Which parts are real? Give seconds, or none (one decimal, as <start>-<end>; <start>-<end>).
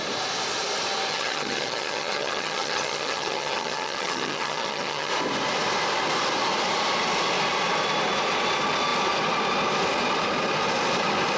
0.0-1.1; 5.1-11.4